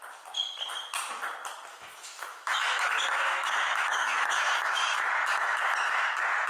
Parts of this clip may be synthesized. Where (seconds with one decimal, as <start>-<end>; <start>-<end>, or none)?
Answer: 1.7-5.6